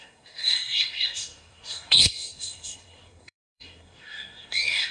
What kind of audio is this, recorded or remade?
remade